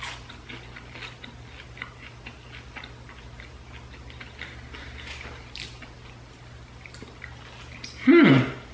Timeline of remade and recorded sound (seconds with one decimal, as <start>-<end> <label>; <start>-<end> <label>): 0.0-8.7 recorded